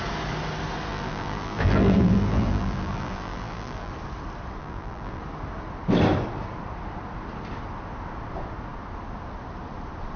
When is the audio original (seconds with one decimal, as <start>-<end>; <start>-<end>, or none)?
0.0-0.9; 3.9-4.6; 5.2-10.2